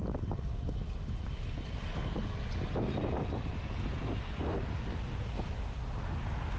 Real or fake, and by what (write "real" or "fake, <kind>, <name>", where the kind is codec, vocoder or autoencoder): real